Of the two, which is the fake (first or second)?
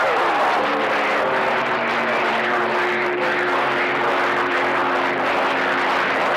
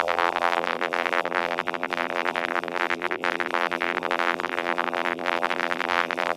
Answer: second